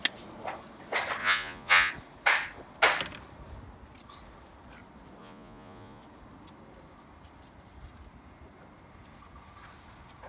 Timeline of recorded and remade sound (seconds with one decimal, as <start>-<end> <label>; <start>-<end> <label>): 0.0-1.2 recorded; 1.2-1.9 remade; 1.9-5.2 recorded; 5.2-6.0 remade; 6.0-10.3 recorded

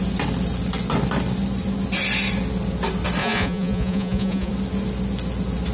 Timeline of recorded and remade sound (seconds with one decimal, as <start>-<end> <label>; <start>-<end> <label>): 0.0-3.2 recorded; 3.2-4.5 remade; 4.5-5.7 recorded

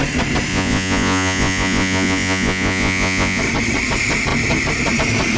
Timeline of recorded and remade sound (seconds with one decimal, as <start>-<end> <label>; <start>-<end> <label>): 0.0-0.5 recorded; 0.5-3.4 remade; 3.4-5.4 recorded